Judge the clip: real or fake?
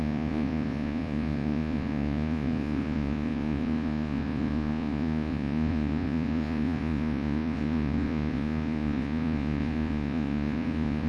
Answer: fake